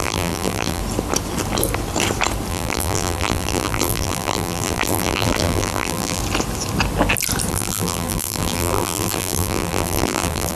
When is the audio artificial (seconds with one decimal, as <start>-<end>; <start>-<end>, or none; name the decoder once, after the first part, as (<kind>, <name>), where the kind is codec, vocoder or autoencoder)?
0.0-0.8 (vocoder, BigVGAN v2); 2.5-6.2; 7.5-10.5